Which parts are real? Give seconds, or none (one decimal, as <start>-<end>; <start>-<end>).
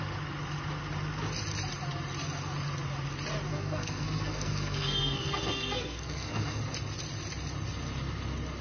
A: 0.0-3.5; 6.6-8.6